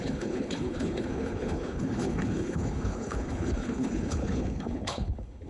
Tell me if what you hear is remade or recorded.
remade